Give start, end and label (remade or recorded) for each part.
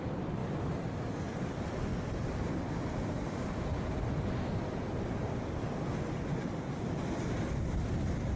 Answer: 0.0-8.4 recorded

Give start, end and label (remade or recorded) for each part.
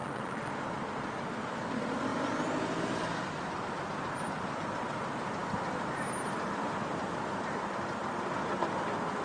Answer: 0.0-0.5 remade; 0.5-9.2 recorded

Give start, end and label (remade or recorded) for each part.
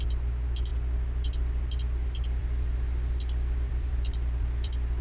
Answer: 0.0-5.0 remade